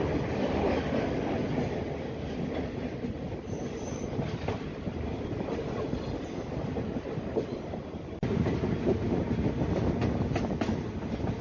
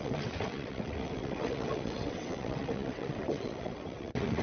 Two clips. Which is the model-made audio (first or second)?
second